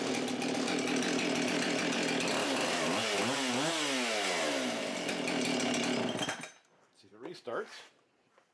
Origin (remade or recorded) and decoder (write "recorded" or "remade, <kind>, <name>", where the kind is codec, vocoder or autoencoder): recorded